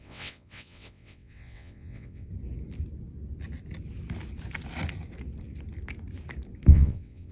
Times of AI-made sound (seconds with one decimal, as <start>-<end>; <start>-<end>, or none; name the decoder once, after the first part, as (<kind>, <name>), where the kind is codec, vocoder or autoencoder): 0.0-2.3 (vocoder, WaveNeXt); 6.7-7.3